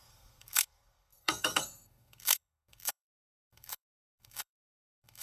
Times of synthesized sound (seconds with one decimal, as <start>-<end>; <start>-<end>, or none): 0.0-5.2